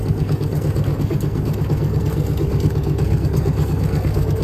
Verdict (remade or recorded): remade